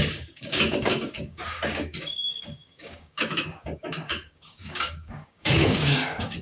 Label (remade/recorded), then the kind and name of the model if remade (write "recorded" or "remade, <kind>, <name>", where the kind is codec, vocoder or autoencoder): remade, codec, DAC